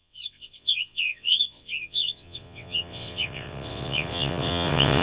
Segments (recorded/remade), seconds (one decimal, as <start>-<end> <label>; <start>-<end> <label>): 0.0-5.0 remade